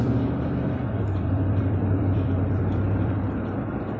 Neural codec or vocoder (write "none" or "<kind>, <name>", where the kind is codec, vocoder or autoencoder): vocoder, BigVGAN v2